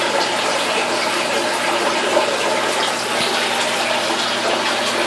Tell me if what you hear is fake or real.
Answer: real